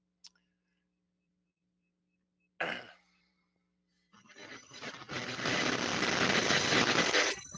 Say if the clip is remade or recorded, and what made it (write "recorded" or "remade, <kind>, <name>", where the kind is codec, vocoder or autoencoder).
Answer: recorded